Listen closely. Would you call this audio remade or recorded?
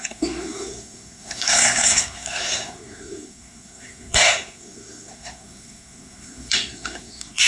remade